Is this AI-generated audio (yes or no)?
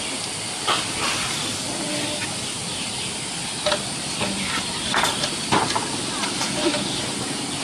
no